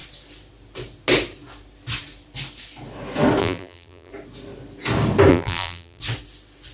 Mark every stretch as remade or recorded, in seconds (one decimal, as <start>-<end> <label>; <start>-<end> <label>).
0.0-3.4 recorded; 3.4-4.1 remade; 4.1-5.3 recorded; 5.3-6.0 remade; 6.0-6.7 recorded